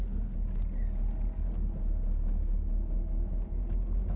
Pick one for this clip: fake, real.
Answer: real